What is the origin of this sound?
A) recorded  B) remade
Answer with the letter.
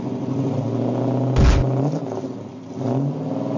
A